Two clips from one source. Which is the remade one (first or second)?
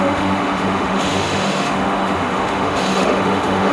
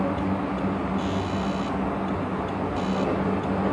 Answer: first